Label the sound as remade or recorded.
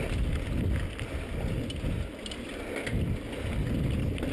recorded